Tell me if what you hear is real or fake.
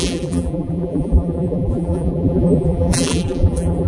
fake